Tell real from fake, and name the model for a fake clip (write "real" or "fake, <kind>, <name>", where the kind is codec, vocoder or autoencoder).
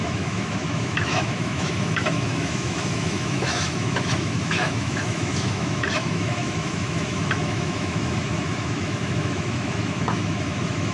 fake, autoencoder, DAC-VAE